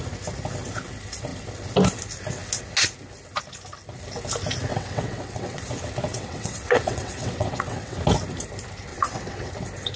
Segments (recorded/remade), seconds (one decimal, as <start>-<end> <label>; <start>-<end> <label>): 0.0-4.7 recorded; 4.7-5.6 remade; 5.6-6.1 recorded; 6.1-8.0 remade; 8.0-8.9 recorded; 8.9-9.5 remade; 9.5-10.0 recorded